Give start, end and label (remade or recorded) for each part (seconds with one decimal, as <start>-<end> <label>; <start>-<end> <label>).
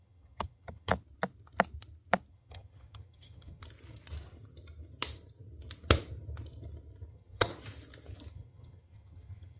0.0-0.9 remade; 0.9-2.3 recorded; 2.3-3.6 remade; 3.6-7.1 recorded; 7.1-7.5 remade; 7.5-8.3 recorded; 8.3-9.6 remade